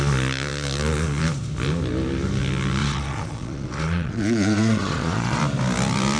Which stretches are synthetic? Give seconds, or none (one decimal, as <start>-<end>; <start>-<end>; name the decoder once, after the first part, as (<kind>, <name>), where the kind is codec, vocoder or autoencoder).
2.8-5.4 (vocoder, Vocos)